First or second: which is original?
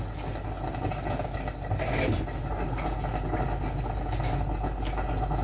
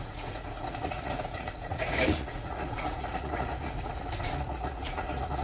first